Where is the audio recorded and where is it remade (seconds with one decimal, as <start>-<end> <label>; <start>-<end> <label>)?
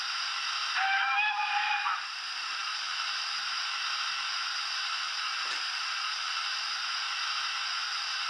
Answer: 0.0-8.3 recorded